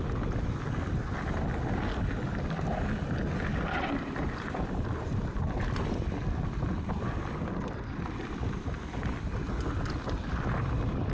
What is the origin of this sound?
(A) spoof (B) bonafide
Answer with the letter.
B